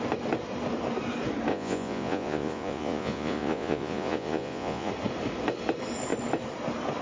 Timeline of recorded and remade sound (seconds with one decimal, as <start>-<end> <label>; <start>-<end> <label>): 0.0-1.5 recorded; 1.5-4.9 remade; 4.9-7.0 recorded